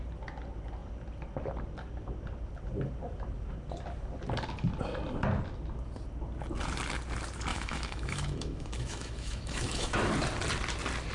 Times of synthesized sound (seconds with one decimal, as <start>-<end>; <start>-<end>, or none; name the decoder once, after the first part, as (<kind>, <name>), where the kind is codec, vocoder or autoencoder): 7.5-10.1 (autoencoder, DAC-VAE)